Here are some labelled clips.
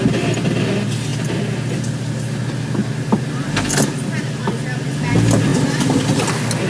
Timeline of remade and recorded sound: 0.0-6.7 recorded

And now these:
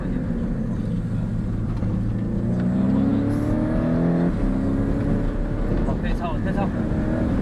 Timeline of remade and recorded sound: 0.0-1.3 recorded; 1.3-2.1 remade; 2.1-7.4 recorded

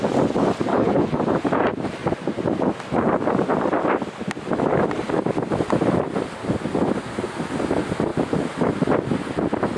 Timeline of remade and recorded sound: 0.0-0.7 recorded; 0.7-1.2 remade; 1.2-9.8 recorded

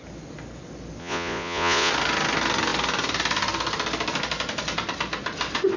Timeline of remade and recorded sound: 0.0-1.0 recorded; 1.0-1.9 remade; 1.9-5.8 recorded

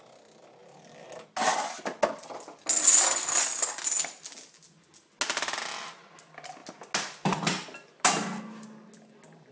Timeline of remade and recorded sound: 0.0-9.5 recorded

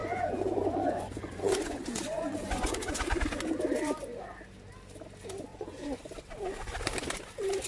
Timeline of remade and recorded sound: 0.0-3.2 remade; 3.2-5.5 recorded; 5.5-6.0 remade; 6.0-7.7 recorded

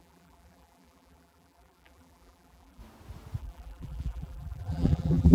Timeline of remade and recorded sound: 0.0-2.8 remade; 2.8-3.4 recorded; 3.4-5.3 remade